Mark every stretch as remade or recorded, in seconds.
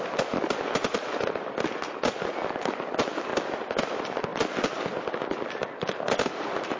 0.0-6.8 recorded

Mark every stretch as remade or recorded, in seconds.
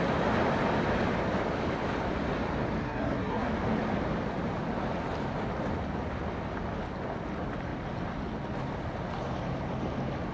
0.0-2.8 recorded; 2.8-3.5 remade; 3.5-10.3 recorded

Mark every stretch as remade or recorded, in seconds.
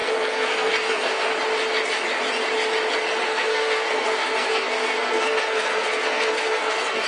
0.0-1.3 remade; 1.3-3.2 recorded; 3.2-7.1 remade